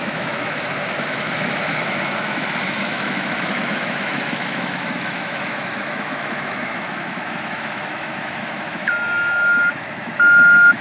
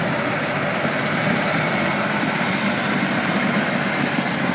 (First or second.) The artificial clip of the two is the first